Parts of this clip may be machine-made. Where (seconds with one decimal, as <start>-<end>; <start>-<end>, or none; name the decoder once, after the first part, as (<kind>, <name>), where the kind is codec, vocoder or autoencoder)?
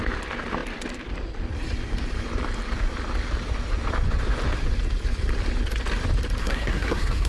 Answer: 6.4-7.3 (codec, SNAC)